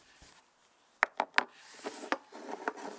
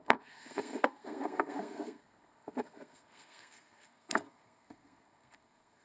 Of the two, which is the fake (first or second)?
second